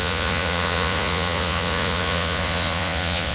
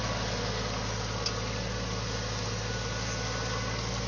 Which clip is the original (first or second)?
second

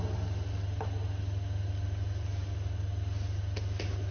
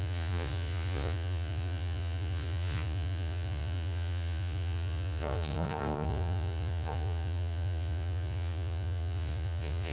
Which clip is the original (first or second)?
first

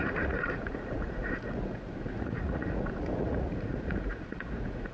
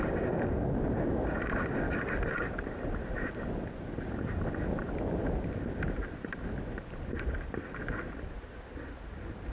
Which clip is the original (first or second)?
second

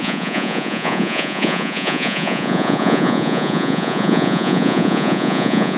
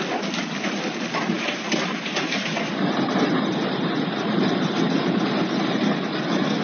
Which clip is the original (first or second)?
second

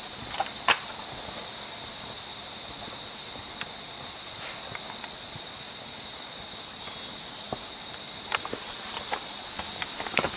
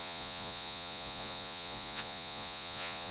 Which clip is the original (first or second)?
first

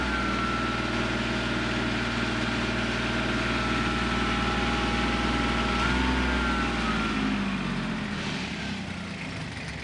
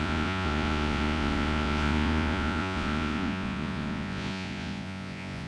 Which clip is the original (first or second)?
first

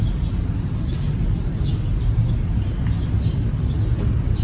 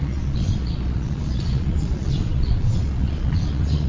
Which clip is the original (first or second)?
first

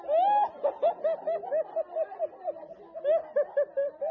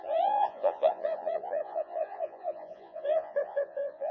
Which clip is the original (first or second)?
first